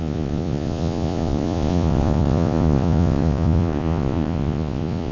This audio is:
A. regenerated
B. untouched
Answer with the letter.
A